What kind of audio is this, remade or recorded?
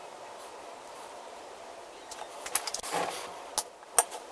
recorded